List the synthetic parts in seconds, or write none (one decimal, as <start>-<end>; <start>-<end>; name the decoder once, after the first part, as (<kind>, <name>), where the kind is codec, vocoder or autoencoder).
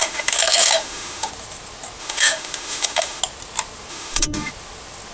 0.0-1.3 (autoencoder, DAC-VAE); 2.0-3.2; 3.9-4.5